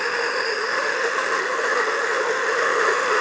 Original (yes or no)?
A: no